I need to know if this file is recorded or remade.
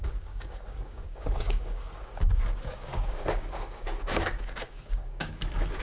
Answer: remade